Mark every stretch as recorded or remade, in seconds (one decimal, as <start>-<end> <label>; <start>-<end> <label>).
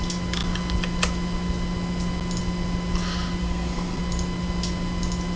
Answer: 0.0-3.4 recorded; 3.4-4.0 remade; 4.0-5.4 recorded